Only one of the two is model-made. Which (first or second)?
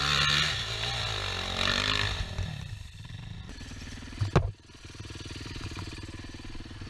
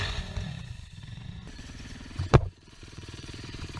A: second